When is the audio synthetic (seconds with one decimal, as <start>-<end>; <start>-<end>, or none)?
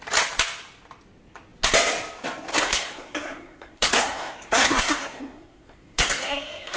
2.5-6.8